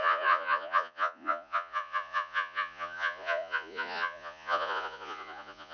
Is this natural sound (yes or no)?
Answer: no